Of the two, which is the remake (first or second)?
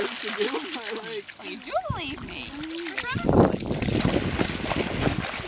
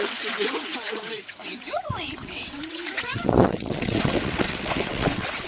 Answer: second